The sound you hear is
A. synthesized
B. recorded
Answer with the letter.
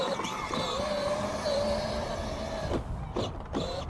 B